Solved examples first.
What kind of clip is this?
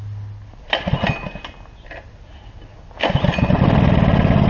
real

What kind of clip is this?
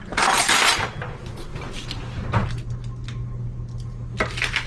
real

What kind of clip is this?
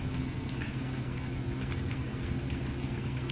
fake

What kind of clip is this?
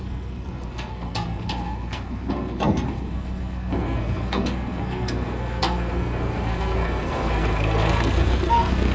fake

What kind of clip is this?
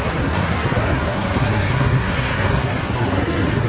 fake